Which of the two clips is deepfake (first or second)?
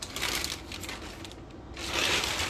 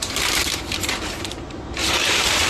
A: second